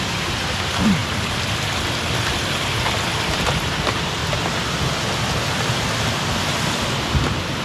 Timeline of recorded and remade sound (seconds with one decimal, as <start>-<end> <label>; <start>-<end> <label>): 0.0-1.0 remade; 1.0-2.5 recorded; 2.5-4.2 remade; 4.2-7.6 recorded